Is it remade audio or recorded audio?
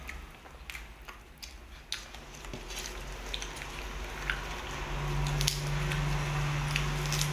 recorded